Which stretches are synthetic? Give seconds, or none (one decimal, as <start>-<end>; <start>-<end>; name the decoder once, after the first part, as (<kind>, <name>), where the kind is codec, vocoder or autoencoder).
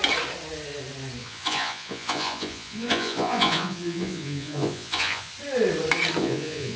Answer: 1.2-5.3 (vocoder, Vocos); 6.2-6.8